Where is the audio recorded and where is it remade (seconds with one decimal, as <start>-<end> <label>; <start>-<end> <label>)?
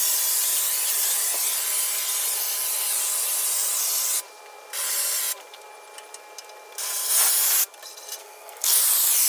0.0-8.2 recorded; 8.2-8.8 remade; 8.8-9.3 recorded